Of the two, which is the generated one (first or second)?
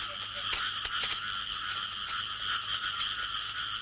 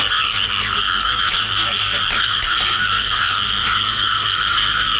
second